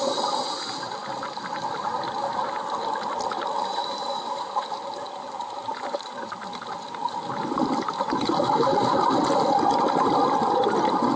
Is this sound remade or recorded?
recorded